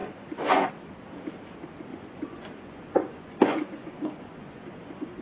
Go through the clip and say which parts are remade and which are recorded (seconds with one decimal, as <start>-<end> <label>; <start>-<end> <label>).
0.0-0.7 remade; 0.7-1.9 recorded; 1.9-5.2 remade